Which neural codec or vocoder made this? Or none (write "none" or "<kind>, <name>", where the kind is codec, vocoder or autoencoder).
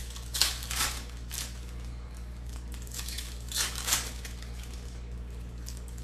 codec, DAC